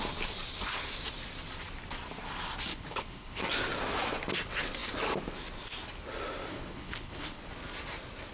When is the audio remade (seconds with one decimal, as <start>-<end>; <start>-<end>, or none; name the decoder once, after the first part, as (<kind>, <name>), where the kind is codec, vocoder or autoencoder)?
2.7-3.4 (codec, HILCodec); 6.5-7.4